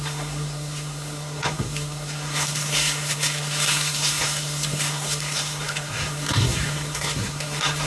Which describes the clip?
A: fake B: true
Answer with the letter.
A